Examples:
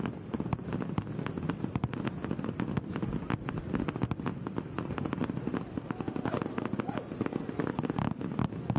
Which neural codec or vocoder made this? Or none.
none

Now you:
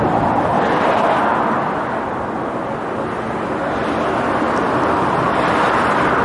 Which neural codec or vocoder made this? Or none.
none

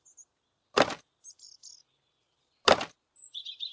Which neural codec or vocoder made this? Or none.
vocoder, BigVGAN v2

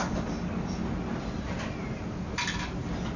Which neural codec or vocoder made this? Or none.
none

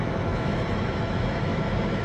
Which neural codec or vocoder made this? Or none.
autoencoder, DAC-VAE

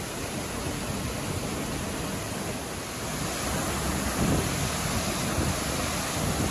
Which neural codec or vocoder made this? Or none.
none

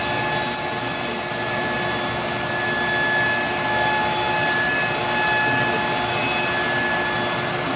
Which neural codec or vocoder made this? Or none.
none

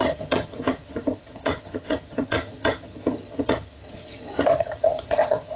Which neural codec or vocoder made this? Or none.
vocoder, HiFi-GAN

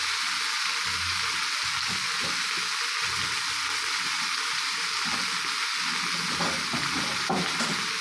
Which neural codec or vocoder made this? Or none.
none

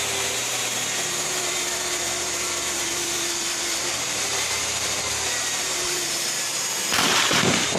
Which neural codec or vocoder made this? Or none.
vocoder, BigVGAN v2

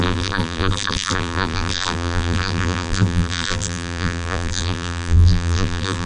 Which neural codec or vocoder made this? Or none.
vocoder, BigVGAN v2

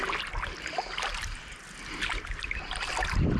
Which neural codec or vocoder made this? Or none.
none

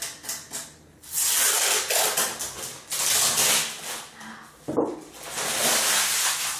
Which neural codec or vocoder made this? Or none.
none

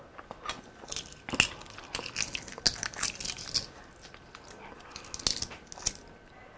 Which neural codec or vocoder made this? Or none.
none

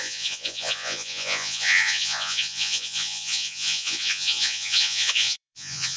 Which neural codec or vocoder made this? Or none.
vocoder, Vocos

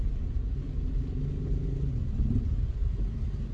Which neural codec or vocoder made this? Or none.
none